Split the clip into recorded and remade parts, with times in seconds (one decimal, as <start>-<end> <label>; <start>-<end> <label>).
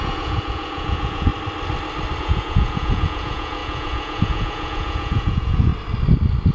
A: 0.0-1.3 remade; 1.3-2.2 recorded; 2.2-5.7 remade; 5.7-6.5 recorded